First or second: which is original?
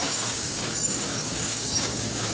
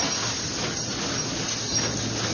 second